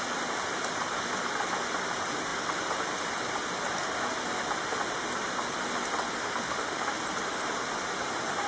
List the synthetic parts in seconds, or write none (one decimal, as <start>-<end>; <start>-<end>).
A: 6.4-7.0